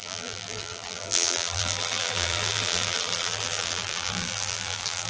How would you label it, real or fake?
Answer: fake